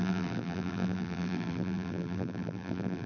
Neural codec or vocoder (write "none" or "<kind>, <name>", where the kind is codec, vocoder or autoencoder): vocoder, BigVGAN v2